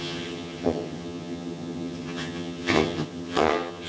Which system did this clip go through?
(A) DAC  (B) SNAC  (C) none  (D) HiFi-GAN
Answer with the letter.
D